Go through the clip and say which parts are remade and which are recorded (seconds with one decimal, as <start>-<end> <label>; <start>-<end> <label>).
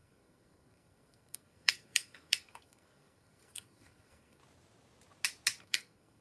0.0-4.4 remade; 4.4-5.6 recorded; 5.6-6.2 remade